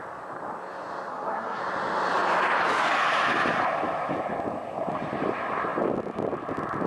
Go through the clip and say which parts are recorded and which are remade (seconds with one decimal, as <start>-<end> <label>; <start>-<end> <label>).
0.0-1.1 recorded; 1.1-1.6 remade; 1.6-6.9 recorded